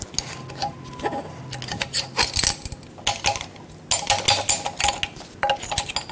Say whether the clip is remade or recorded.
recorded